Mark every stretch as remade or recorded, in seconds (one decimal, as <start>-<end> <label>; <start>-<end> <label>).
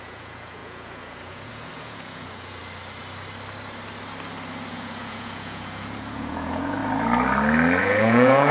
0.0-2.6 remade; 2.6-4.7 recorded; 4.7-6.8 remade; 6.8-7.8 recorded; 7.8-8.5 remade